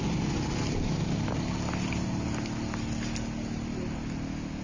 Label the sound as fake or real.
real